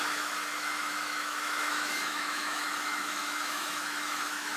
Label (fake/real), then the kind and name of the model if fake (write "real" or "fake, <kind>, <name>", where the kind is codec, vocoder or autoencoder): fake, autoencoder, DAC-VAE